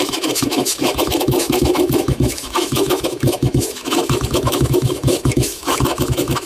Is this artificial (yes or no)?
yes